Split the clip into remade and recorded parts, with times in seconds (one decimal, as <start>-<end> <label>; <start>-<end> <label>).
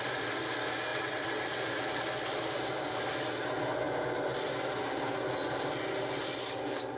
0.0-7.0 recorded